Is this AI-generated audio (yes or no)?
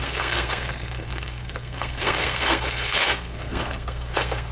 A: yes